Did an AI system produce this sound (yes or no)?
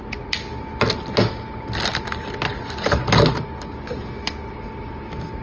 no